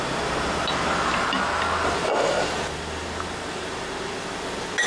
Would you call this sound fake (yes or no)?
no